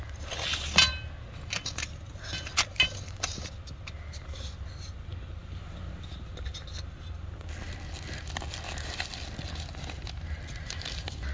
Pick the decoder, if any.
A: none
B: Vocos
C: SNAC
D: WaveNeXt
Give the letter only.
A